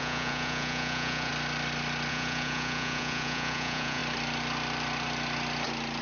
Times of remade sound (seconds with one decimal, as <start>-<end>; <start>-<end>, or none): 0.0-1.3; 2.1-4.0